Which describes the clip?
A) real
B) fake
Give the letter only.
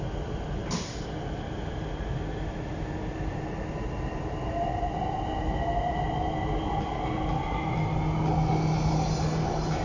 A